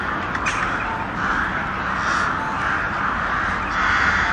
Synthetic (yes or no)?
no